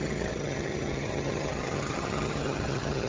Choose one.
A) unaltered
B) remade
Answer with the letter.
B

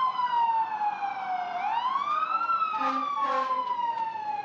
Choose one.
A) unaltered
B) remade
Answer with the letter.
A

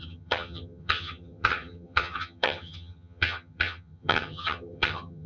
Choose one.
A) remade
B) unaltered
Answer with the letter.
A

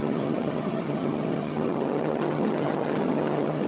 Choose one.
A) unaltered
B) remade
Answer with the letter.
B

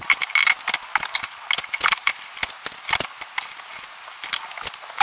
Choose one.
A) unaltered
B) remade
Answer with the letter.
A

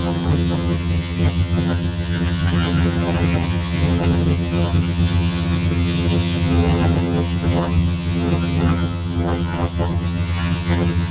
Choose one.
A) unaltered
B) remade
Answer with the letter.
B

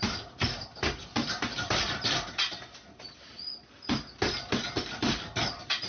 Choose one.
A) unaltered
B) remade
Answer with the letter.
A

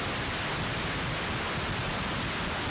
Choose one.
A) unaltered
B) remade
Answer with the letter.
A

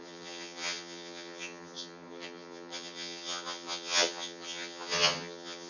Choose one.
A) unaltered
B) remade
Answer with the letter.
B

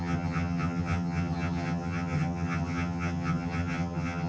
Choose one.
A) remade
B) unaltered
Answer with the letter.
A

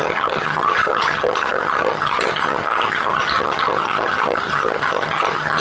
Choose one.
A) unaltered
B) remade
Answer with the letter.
B